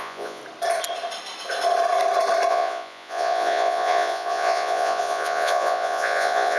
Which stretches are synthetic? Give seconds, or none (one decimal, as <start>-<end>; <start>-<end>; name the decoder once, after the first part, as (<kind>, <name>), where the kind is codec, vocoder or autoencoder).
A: 0.0-0.4 (vocoder, Vocos); 2.5-6.6

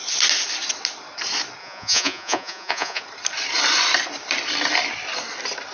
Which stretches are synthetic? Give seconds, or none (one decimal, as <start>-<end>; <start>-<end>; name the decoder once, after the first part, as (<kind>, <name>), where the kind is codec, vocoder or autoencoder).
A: 1.6-3.0 (vocoder, Vocos)

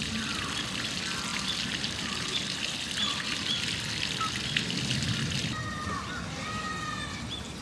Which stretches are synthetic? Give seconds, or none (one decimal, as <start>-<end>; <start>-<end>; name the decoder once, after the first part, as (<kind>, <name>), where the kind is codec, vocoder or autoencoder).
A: none

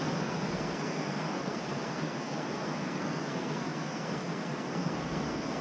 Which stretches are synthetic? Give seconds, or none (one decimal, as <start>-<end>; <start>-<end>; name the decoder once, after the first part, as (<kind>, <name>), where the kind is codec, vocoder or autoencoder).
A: 0.0-5.6 (codec, SNAC)

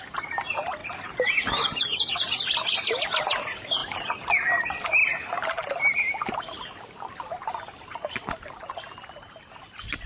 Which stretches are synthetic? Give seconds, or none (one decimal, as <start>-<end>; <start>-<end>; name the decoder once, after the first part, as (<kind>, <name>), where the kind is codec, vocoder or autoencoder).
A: 0.8-1.8 (vocoder, BigVGAN v2); 3.8-4.3